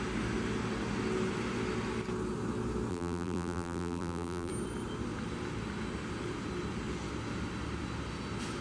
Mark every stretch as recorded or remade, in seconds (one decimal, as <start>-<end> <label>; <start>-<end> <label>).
0.0-2.9 recorded; 2.9-4.5 remade; 4.5-8.6 recorded